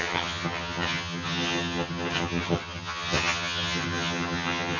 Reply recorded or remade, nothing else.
remade